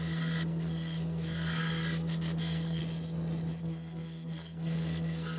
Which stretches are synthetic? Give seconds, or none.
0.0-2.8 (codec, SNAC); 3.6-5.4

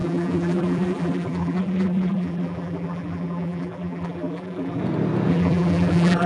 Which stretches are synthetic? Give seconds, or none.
0.0-4.8 (vocoder, BigVGAN v2); 5.3-6.3

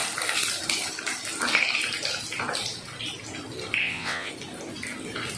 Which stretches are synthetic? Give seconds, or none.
3.8-4.3 (vocoder, WaveNeXt)

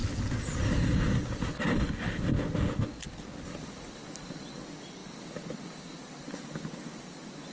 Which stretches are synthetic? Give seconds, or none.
none

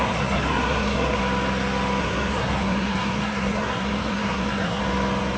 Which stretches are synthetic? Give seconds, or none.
0.0-1.2 (codec, SNAC); 2.0-4.8

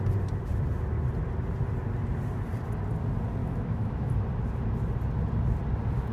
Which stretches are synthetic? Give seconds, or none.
3.4-4.1 (autoencoder, DAC-VAE)